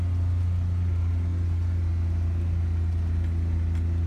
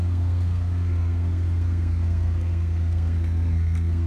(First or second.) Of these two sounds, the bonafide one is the first